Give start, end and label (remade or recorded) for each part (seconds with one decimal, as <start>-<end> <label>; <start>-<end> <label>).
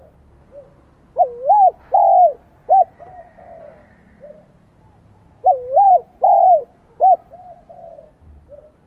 0.0-2.6 recorded; 2.6-3.4 remade; 3.4-3.8 recorded; 3.8-7.9 remade; 7.9-8.9 recorded